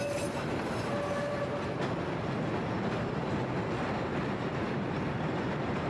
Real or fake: real